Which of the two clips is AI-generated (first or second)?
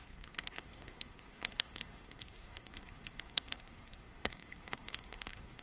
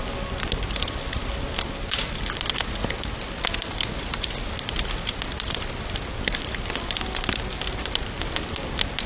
first